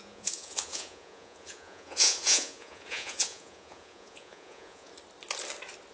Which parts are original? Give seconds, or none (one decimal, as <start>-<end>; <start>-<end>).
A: 4.9-5.9